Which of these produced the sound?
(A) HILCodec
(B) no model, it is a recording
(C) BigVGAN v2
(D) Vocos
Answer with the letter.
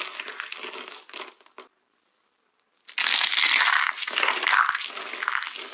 B